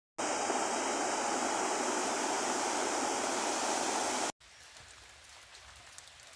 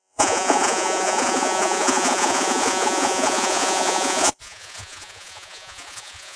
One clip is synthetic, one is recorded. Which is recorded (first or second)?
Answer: first